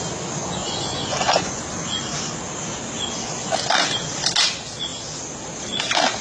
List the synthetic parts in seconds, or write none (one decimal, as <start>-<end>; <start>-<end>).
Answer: 0.6-1.6